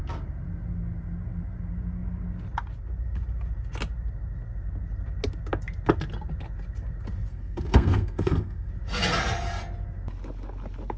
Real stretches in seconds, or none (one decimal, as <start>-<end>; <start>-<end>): 0.0-7.3; 8.7-11.0